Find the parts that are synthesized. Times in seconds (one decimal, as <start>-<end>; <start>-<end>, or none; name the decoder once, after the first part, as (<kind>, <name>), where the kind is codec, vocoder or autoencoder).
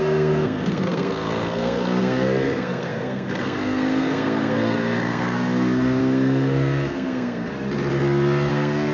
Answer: 0.0-7.5 (codec, SNAC); 8.5-8.9